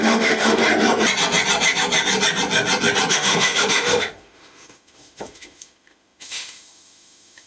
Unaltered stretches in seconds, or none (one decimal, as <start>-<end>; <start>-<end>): 0.6-3.1